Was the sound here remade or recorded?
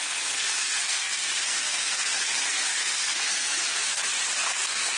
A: remade